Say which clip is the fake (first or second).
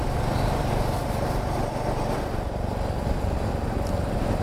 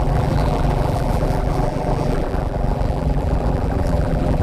second